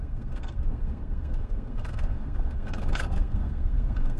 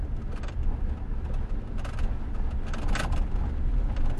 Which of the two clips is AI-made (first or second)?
first